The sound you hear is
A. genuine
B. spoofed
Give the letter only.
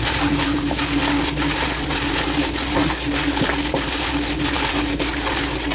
A